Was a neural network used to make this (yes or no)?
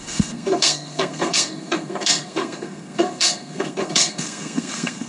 yes